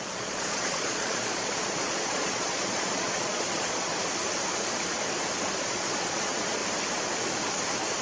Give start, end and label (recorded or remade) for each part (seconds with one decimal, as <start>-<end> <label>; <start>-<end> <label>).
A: 0.0-3.9 remade; 3.9-5.6 recorded; 5.6-6.6 remade; 6.6-8.0 recorded